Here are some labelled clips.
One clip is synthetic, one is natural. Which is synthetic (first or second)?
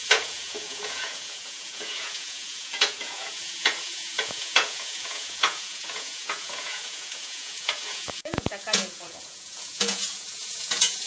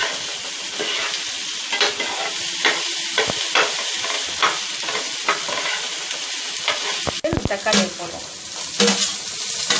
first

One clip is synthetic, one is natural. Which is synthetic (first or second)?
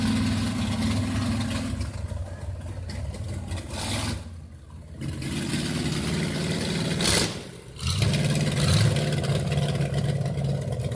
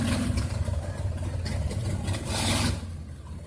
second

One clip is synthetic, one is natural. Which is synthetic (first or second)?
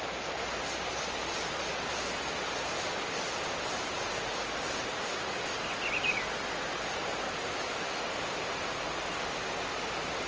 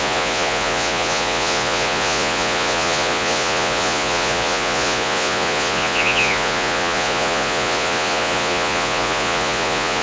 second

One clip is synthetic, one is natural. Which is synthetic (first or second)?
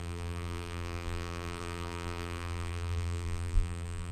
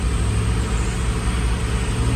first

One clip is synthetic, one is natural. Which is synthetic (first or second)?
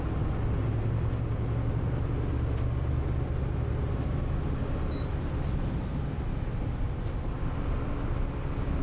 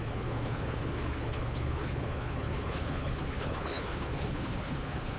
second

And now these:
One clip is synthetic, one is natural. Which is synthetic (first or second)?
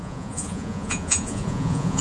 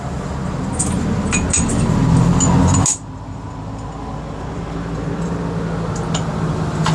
first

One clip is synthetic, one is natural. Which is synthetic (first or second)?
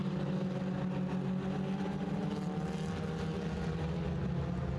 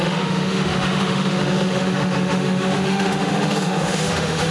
second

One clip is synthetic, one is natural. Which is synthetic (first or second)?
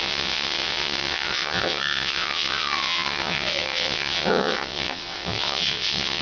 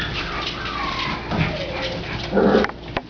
first